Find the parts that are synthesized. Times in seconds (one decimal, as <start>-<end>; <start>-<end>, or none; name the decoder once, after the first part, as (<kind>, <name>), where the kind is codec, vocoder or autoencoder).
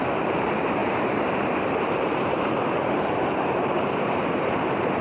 0.0-5.0 (vocoder, BigVGAN v2)